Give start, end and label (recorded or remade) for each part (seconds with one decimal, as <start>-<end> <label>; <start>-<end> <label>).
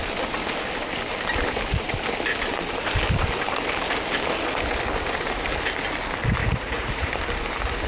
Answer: 0.0-6.4 recorded; 6.4-7.1 remade; 7.1-7.9 recorded